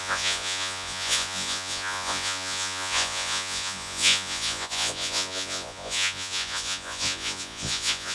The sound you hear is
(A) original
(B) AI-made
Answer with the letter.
B